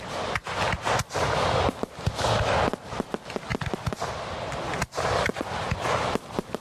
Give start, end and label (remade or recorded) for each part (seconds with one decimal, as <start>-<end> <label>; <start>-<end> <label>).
0.0-0.4 recorded; 0.4-0.9 remade; 0.9-6.6 recorded